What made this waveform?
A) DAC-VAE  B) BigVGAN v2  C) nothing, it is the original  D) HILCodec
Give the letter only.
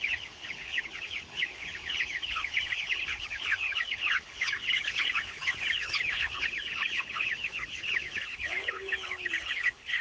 D